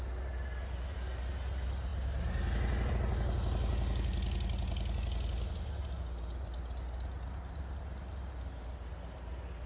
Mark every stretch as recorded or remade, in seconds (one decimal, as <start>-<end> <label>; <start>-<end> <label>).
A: 0.0-9.7 recorded

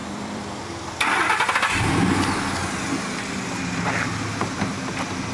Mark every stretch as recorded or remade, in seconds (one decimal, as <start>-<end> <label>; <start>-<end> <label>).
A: 0.0-2.0 remade; 2.0-5.3 recorded

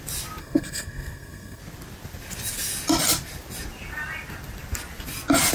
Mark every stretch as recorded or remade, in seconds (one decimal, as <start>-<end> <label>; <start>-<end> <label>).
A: 0.0-0.4 recorded; 0.4-1.6 remade; 1.6-5.5 recorded

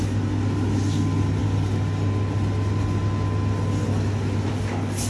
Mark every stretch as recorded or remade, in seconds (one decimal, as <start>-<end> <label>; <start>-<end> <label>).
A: 0.0-5.1 recorded

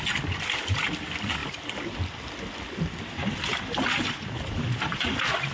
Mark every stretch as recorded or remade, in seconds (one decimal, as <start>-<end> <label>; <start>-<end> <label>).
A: 0.0-5.5 recorded

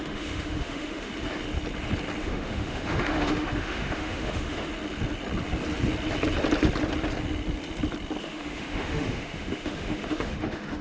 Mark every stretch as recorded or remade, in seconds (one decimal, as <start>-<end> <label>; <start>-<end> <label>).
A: 0.0-1.1 remade; 1.1-2.2 recorded; 2.2-4.7 remade; 4.7-8.2 recorded; 8.2-10.8 remade

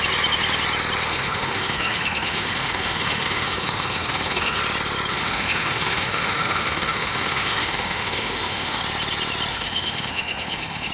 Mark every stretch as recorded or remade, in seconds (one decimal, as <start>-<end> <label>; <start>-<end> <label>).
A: 0.0-1.1 recorded; 1.1-4.6 remade; 4.6-5.1 recorded; 5.1-8.8 remade; 8.8-9.5 recorded; 9.5-10.9 remade